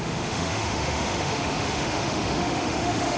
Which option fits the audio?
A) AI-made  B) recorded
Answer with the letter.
A